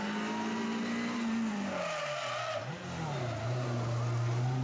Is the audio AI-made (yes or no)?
no